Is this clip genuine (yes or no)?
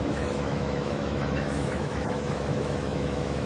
no